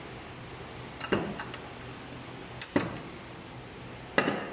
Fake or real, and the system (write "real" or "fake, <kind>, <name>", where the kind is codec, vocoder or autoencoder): real